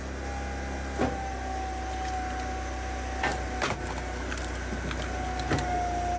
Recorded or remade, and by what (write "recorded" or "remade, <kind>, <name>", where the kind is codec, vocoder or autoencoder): recorded